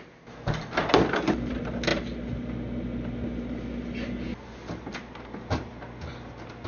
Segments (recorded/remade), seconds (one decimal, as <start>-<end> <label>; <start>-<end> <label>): 0.0-6.7 recorded